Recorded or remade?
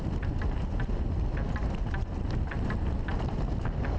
recorded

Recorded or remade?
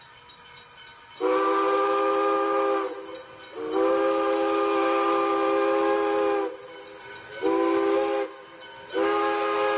recorded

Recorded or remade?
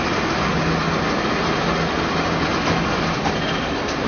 recorded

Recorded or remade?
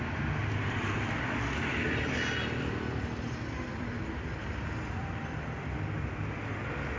recorded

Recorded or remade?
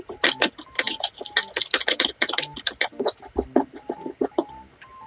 recorded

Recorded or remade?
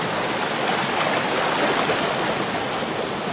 recorded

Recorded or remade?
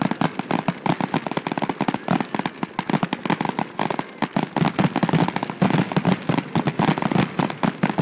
recorded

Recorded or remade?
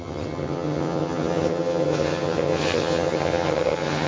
remade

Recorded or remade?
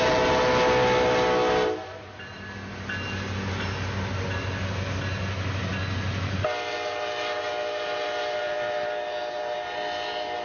recorded